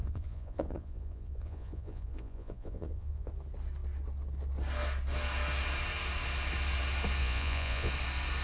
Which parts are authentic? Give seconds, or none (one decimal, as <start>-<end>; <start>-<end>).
3.3-7.2; 7.9-8.4